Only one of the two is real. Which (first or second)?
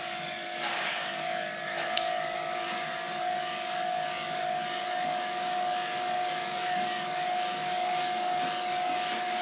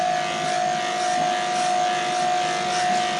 second